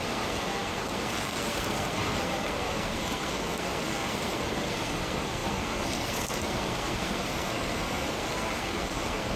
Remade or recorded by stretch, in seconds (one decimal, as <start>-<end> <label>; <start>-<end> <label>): 0.0-9.4 remade